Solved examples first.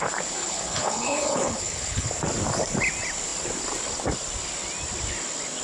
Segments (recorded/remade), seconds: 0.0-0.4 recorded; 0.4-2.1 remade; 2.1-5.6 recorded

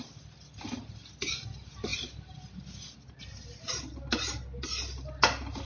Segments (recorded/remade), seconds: 0.0-5.6 recorded

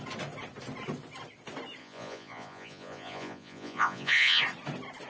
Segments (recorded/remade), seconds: 0.0-1.8 recorded; 1.8-4.4 remade; 4.4-5.1 recorded

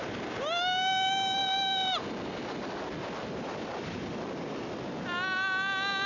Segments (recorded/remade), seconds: 0.0-6.1 recorded

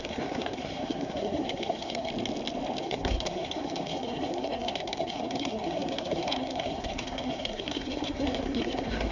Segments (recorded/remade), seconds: 0.0-2.1 remade; 2.1-2.8 recorded; 2.8-9.1 remade

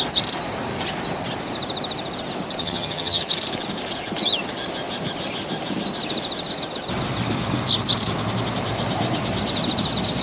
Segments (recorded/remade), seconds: 0.0-2.6 recorded; 2.6-3.2 remade; 3.2-10.2 recorded

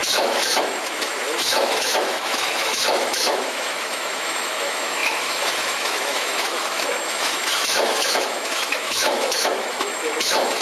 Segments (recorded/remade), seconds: 0.0-10.6 remade

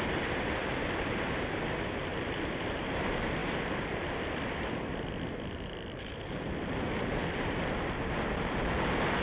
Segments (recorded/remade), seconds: 0.0-9.2 recorded